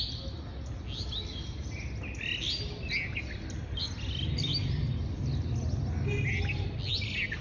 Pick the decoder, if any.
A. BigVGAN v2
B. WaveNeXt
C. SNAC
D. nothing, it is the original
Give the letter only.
D